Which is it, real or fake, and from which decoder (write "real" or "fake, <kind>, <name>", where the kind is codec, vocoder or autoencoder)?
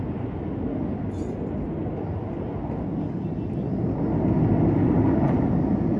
real